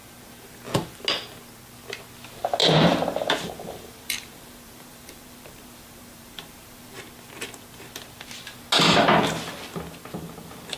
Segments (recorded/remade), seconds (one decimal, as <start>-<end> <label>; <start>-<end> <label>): 0.0-2.6 recorded; 2.6-7.0 remade; 7.0-10.8 recorded

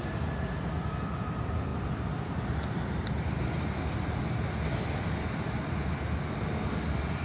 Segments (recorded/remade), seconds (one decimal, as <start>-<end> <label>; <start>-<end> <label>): 0.0-7.2 recorded

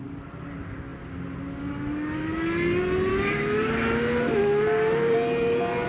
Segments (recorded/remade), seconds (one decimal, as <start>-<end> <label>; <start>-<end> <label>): 0.0-3.1 recorded; 3.1-3.7 remade; 3.7-5.9 recorded

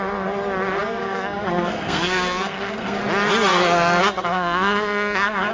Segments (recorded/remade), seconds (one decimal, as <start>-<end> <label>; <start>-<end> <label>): 0.0-1.0 recorded; 1.0-3.0 remade; 3.0-3.5 recorded; 3.5-5.5 remade

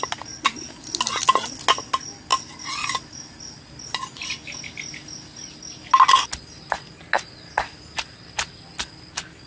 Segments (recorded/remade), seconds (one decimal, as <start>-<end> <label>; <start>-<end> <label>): 0.0-9.5 recorded

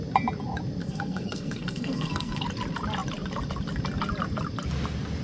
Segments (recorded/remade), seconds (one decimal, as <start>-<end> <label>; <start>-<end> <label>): 0.0-0.8 recorded; 0.8-2.4 remade; 2.4-5.2 recorded

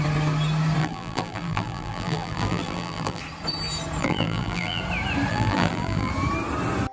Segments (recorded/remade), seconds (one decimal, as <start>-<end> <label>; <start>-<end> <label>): 0.0-0.8 recorded; 0.8-3.2 remade; 3.2-4.0 recorded; 4.0-4.8 remade; 4.8-5.3 recorded; 5.3-6.1 remade; 6.1-6.9 recorded

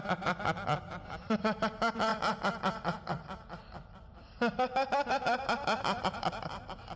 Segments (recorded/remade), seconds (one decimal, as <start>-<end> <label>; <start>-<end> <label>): 0.0-2.1 remade; 2.1-5.1 recorded; 5.1-7.0 remade